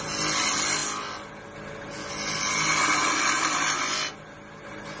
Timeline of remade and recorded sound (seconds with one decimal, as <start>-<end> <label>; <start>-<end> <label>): 0.0-5.0 recorded